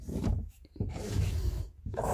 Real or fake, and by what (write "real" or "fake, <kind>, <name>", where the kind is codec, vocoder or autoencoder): fake, codec, DAC